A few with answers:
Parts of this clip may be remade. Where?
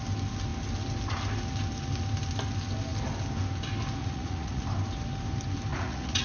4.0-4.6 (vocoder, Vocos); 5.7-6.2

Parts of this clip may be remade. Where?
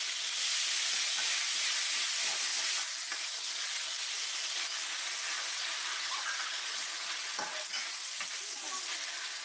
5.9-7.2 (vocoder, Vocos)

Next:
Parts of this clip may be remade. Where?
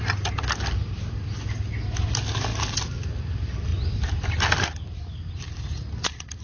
none